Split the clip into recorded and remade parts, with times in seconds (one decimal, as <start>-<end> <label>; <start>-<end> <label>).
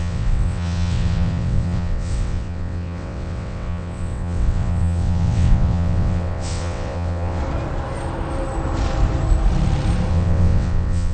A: 0.0-7.4 remade; 7.4-10.1 recorded; 10.1-11.1 remade